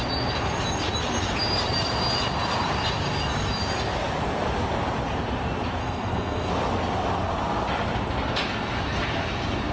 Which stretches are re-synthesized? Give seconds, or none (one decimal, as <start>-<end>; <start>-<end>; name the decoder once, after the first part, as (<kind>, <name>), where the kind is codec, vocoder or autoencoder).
5.8-6.5 (codec, SNAC)